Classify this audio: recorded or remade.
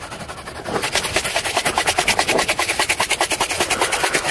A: recorded